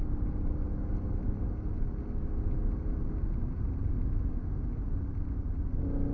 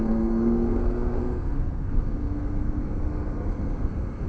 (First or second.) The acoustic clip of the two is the first